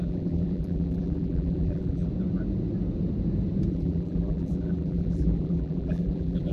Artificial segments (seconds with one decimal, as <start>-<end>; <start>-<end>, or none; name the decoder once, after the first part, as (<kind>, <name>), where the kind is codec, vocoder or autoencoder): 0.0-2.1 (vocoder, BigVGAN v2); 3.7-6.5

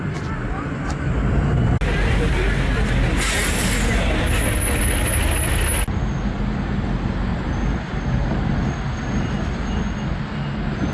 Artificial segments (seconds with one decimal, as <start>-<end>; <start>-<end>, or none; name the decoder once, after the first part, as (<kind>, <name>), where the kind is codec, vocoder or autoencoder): none

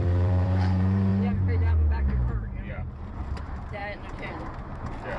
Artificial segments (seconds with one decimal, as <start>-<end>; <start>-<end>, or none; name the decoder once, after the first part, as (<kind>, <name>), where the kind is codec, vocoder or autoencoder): 0.0-1.1 (vocoder, BigVGAN v2); 2.7-3.8

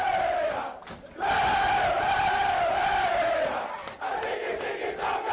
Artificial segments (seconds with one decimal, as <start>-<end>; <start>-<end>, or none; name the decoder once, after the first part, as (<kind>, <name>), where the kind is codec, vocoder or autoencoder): 3.5-4.1 (vocoder, BigVGAN v2)